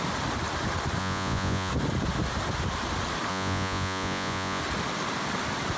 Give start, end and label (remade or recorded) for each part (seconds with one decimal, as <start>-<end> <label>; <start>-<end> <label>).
0.0-1.0 recorded; 1.0-1.7 remade; 1.7-3.3 recorded; 3.3-4.6 remade; 4.6-5.8 recorded